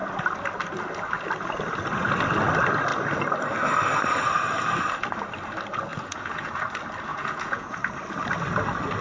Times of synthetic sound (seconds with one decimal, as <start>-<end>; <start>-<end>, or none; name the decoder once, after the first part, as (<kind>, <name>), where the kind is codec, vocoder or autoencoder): 5.9-6.5 (vocoder, Vocos); 7.1-7.8